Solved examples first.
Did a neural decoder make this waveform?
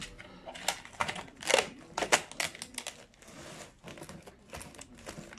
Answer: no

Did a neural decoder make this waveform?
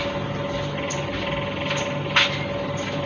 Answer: no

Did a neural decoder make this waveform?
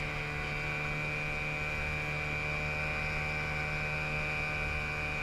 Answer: no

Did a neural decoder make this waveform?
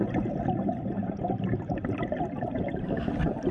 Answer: yes